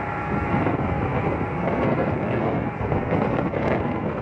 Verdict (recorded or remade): remade